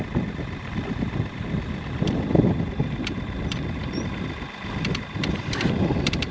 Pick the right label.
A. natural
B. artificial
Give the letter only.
B